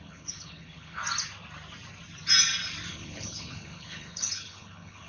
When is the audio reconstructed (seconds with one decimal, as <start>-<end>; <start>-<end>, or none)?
0.0-1.0; 2.9-5.1